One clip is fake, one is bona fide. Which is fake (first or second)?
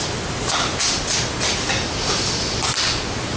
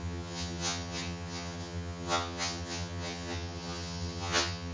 second